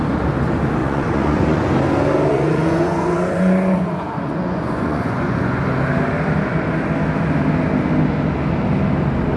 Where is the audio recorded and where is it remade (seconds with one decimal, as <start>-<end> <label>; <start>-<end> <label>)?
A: 0.0-0.8 recorded; 0.8-1.7 remade; 1.7-2.3 recorded; 2.3-5.6 remade; 5.6-9.4 recorded